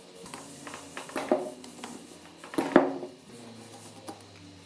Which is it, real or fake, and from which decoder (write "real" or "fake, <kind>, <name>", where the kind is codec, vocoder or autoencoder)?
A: real